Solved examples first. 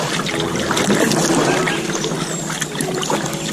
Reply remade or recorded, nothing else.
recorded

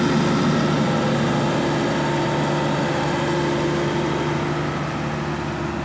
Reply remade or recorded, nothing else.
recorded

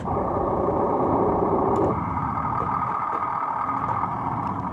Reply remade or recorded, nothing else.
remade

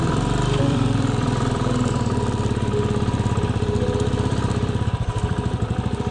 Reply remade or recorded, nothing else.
remade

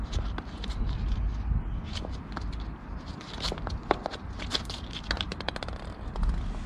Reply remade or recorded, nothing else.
recorded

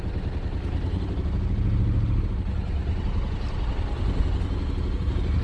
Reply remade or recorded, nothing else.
recorded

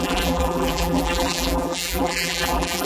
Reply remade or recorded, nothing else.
remade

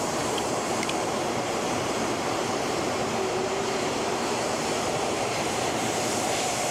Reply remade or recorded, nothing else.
remade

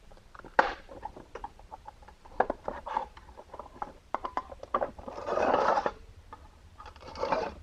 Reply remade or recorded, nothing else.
remade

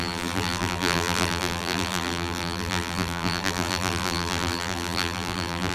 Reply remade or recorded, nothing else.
remade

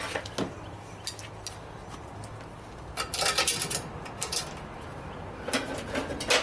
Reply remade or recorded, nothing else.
recorded